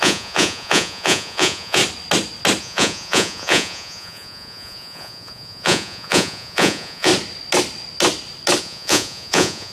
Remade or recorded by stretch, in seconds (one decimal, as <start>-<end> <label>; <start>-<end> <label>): 0.0-1.8 remade; 1.8-2.6 recorded; 2.6-7.1 remade; 7.1-8.6 recorded; 8.6-9.7 remade